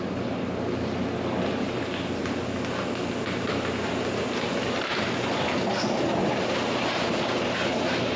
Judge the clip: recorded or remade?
recorded